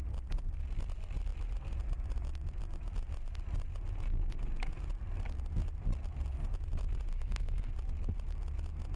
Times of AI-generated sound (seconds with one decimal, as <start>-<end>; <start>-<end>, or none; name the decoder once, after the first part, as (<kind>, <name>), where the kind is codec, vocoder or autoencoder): 7.1-7.7 (codec, SNAC)